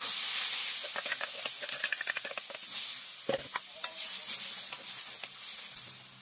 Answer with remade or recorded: recorded